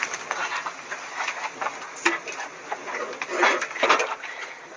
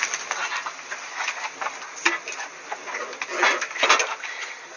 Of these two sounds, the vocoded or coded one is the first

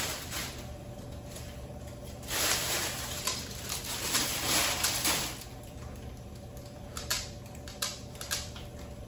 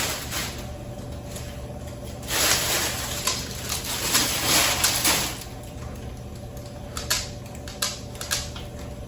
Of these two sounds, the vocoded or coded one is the first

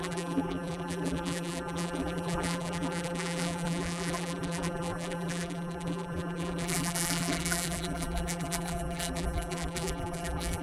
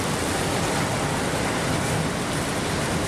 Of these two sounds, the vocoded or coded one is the first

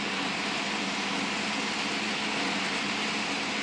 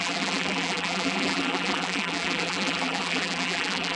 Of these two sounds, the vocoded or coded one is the second